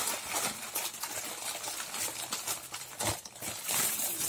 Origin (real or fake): real